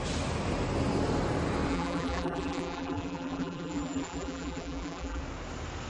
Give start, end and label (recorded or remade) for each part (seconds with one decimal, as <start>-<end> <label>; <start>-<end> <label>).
0.0-1.7 recorded; 1.7-5.2 remade; 5.2-5.9 recorded